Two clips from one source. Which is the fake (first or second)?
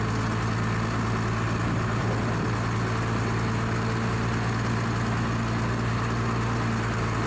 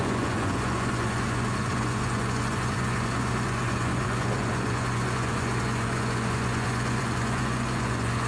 second